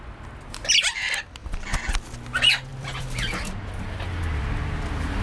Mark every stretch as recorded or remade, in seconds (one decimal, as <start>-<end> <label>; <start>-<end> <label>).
0.0-1.4 recorded; 1.4-2.0 remade; 2.0-2.7 recorded; 2.7-3.3 remade; 3.3-5.2 recorded